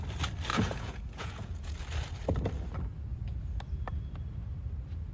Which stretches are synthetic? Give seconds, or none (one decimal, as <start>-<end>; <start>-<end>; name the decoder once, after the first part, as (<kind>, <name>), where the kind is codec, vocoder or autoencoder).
0.5-1.8 (vocoder, Vocos)